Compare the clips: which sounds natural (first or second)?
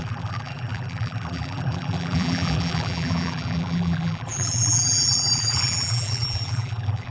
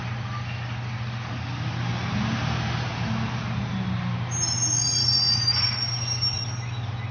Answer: second